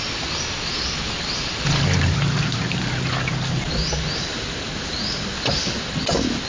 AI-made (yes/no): no